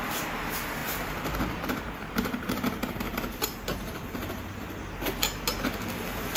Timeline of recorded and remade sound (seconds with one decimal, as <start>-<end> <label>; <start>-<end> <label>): 0.0-0.8 recorded; 0.8-4.6 remade; 4.6-6.4 recorded